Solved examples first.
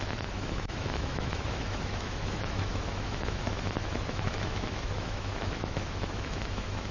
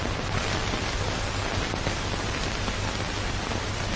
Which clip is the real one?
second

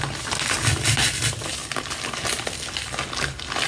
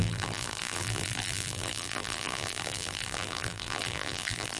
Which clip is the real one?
first